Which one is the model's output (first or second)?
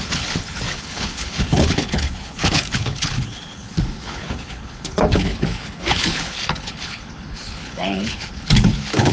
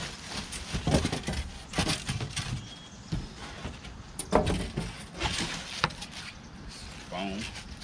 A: first